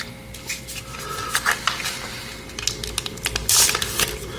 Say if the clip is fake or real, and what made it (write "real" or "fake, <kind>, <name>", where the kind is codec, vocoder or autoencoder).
real